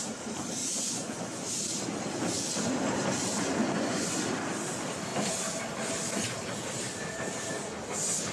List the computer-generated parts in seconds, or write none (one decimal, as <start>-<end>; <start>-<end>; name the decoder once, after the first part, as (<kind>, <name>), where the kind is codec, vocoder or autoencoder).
0.6-1.5 (vocoder, Vocos); 3.6-4.2